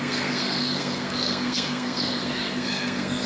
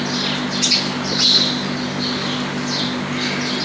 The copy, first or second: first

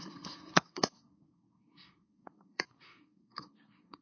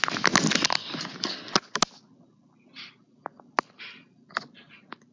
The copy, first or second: first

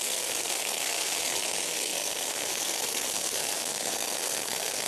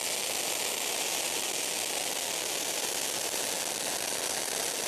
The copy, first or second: first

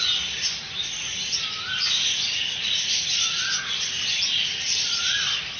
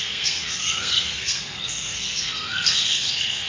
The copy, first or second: second